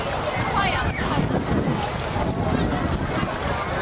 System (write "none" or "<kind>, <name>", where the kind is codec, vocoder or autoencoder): none